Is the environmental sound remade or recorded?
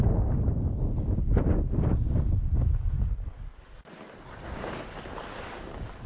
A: recorded